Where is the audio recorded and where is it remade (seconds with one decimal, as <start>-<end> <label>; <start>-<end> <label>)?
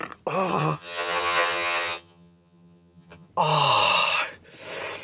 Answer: 0.0-0.5 recorded; 0.5-3.3 remade; 3.3-5.0 recorded